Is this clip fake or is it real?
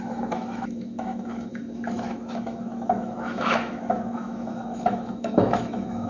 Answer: fake